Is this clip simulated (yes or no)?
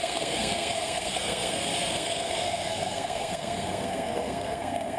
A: yes